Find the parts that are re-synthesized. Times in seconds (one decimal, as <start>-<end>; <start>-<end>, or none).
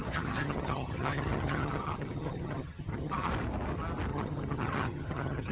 0.0-3.3; 4.1-5.5